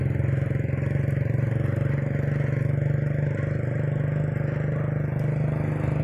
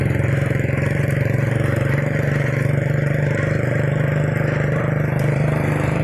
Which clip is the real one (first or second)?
first